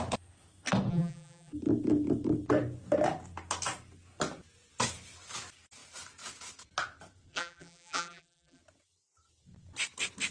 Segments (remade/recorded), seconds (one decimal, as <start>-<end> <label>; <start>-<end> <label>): 0.0-0.9 recorded; 0.9-1.5 remade; 1.5-7.3 recorded; 7.3-8.6 remade; 8.6-10.3 recorded

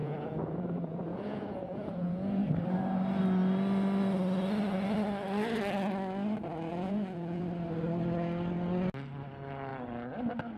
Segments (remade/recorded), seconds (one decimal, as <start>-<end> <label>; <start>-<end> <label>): 0.0-2.4 remade; 2.4-6.7 recorded; 6.7-7.4 remade; 7.4-10.6 recorded

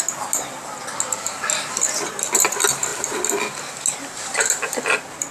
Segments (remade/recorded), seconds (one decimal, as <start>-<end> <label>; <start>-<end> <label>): 0.0-5.3 recorded

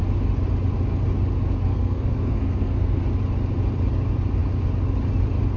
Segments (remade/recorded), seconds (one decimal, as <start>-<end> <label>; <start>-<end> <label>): 0.0-1.7 recorded; 1.7-3.0 remade; 3.0-5.6 recorded

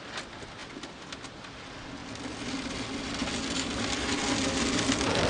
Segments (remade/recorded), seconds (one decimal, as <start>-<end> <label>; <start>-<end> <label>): 0.0-2.0 recorded; 2.0-2.5 remade; 2.5-3.2 recorded; 3.2-4.2 remade; 4.2-5.3 recorded

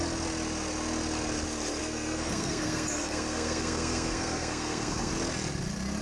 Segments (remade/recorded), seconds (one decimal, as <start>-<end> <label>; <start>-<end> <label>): 0.0-1.8 recorded; 1.8-5.1 remade; 5.1-6.0 recorded

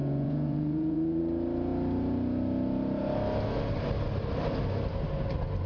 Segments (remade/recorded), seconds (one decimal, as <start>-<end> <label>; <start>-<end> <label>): 0.0-1.2 remade; 1.2-5.7 recorded